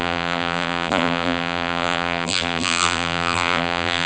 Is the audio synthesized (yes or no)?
yes